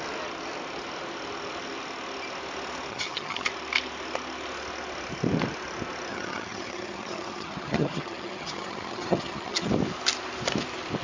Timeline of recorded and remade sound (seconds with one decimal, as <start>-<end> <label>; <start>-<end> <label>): 0.0-2.9 recorded; 2.9-3.5 remade; 3.5-6.1 recorded; 6.1-9.7 remade; 9.7-11.0 recorded